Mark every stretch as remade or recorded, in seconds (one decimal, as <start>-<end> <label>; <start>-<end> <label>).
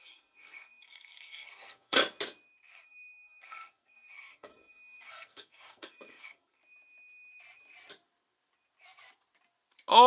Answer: 0.0-2.0 remade; 2.0-2.7 recorded; 2.7-6.6 remade; 6.6-10.1 recorded